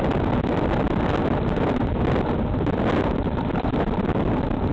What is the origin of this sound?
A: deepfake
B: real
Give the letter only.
B